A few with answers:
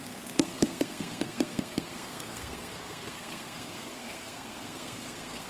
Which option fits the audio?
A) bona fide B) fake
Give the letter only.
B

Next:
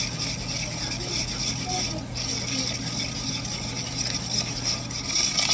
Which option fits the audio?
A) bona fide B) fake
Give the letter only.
A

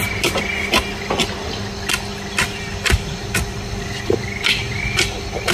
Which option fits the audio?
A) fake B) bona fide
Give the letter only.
B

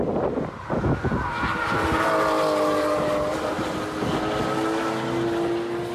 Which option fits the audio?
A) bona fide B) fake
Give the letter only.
A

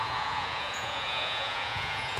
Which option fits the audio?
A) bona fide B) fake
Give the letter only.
B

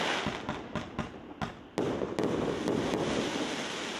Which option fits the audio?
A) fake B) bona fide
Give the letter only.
B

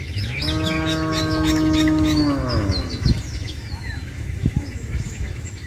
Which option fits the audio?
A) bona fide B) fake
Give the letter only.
B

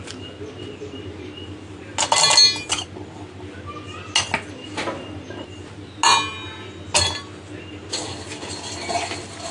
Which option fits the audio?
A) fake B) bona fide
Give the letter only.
B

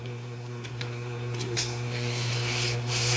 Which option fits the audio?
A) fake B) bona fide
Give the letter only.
A